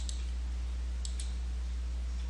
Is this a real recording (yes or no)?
yes